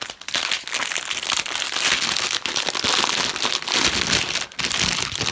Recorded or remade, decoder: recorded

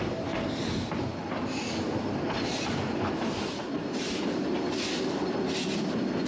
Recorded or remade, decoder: recorded